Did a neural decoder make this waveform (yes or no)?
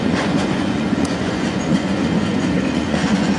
yes